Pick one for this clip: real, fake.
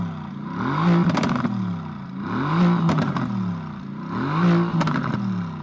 real